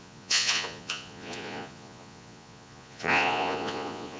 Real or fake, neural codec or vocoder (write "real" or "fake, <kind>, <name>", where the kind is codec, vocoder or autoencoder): fake, vocoder, Vocos